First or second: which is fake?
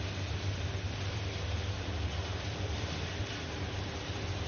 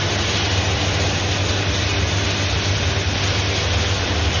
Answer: first